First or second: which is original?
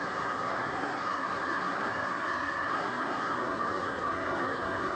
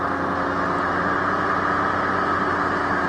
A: second